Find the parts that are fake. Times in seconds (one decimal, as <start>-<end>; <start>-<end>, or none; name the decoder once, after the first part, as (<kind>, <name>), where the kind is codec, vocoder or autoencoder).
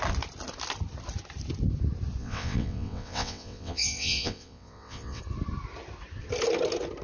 2.2-5.2 (vocoder, WaveNeXt)